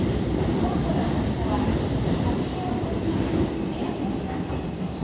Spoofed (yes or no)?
yes